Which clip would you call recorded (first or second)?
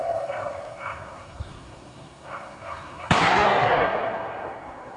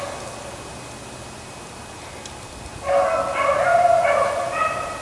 second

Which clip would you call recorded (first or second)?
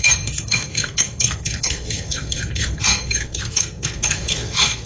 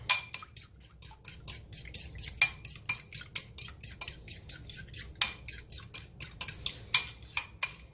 second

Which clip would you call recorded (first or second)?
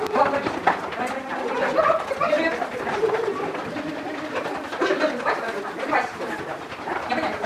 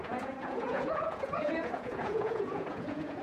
first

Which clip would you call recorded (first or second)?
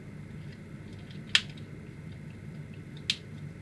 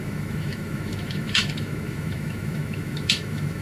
first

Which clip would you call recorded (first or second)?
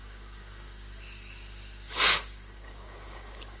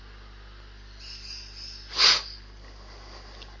second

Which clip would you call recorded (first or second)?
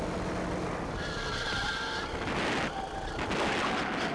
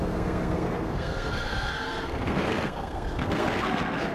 first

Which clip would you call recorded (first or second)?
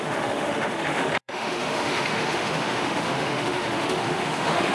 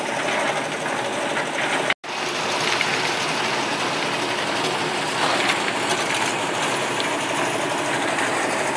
second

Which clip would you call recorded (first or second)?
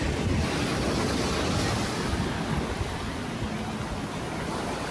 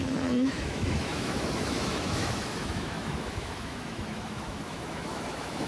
first